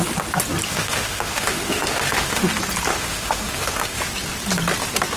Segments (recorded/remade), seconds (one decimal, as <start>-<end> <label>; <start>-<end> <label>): 0.0-0.7 recorded; 0.7-2.5 remade; 2.5-2.9 recorded; 2.9-4.0 remade; 4.0-5.2 recorded